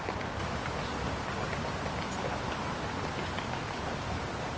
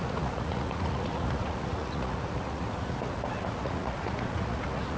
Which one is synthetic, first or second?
second